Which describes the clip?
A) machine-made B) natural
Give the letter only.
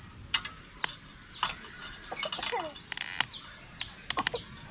B